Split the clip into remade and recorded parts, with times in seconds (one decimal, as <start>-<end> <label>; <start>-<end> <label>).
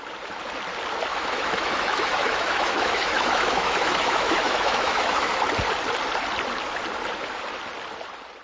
0.0-1.1 recorded; 1.1-5.3 remade; 5.3-8.4 recorded